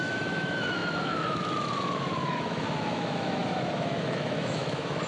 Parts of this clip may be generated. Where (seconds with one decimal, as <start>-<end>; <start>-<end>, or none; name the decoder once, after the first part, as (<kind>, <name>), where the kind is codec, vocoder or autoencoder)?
0.0-5.1 (autoencoder, DAC-VAE)